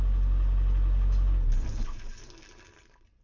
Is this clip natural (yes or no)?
yes